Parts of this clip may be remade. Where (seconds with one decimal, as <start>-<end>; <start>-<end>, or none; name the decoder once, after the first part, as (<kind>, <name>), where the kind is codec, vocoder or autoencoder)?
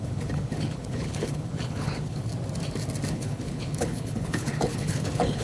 0.0-2.3 (codec, HILCodec); 3.1-5.4